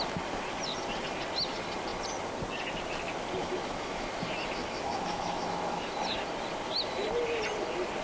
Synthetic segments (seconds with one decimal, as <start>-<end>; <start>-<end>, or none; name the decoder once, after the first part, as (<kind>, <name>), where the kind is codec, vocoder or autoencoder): 3.4-4.1 (autoencoder, DAC-VAE); 4.6-5.9